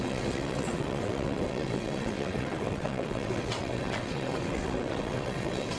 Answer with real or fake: fake